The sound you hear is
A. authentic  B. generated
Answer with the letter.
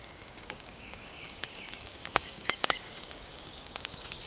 B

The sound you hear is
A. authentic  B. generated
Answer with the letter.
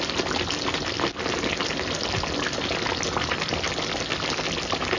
A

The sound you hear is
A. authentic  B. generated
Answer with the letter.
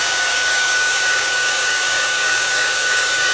B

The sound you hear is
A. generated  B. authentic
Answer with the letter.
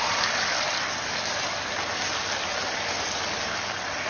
B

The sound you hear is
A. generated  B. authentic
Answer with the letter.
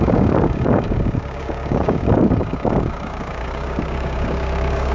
A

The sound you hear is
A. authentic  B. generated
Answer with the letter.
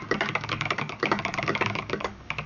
B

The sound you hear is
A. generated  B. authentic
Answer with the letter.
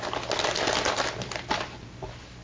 B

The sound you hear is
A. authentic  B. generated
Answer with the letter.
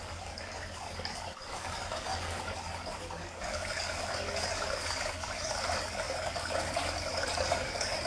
B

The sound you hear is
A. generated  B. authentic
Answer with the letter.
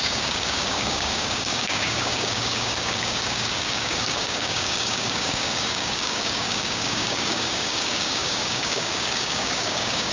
A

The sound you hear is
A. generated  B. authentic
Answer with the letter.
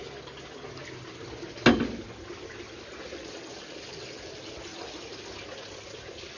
B